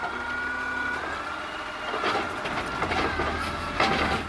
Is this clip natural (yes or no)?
yes